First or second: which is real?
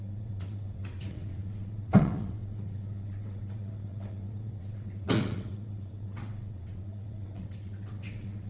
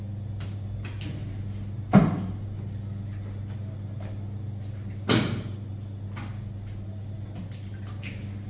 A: second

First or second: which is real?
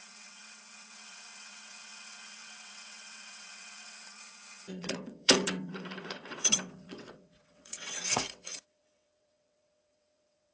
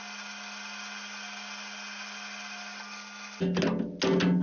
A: second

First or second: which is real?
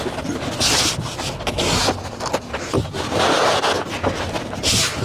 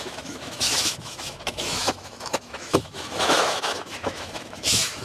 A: first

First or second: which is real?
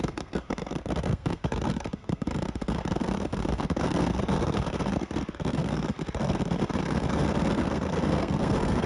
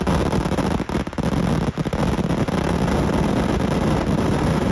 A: second